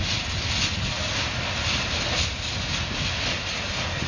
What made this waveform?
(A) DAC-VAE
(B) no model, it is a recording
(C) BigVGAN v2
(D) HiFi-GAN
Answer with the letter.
B